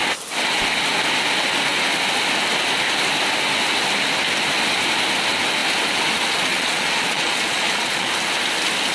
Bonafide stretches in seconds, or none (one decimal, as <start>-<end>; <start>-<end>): 0.0-6.5; 8.1-8.9